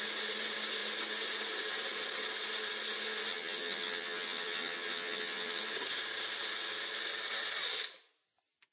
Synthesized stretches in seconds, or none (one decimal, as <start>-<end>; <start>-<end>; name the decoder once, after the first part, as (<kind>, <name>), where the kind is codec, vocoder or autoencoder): 3.3-5.6 (vocoder, HiFi-GAN)

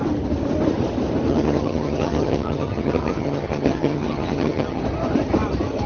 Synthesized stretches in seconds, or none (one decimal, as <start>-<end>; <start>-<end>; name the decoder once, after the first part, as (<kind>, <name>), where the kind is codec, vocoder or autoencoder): 1.3-4.8 (vocoder, HiFi-GAN)